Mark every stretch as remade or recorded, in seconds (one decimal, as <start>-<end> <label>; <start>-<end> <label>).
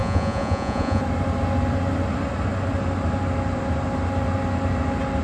0.0-1.0 remade; 1.0-5.2 recorded